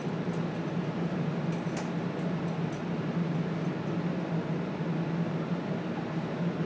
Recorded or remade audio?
recorded